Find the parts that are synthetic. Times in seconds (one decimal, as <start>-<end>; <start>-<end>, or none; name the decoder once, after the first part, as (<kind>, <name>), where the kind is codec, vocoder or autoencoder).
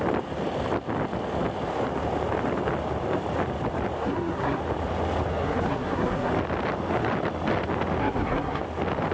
4.0-4.6 (codec, SNAC); 5.3-6.3; 8.0-8.6